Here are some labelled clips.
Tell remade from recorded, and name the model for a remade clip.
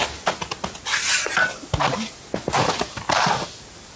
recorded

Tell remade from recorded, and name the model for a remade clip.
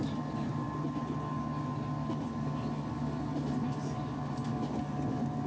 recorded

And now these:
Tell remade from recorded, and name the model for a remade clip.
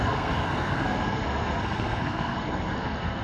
remade, codec, SNAC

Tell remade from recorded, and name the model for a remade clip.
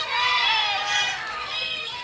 remade, codec, SNAC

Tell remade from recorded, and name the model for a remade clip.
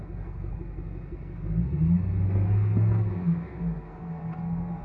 remade, codec, SNAC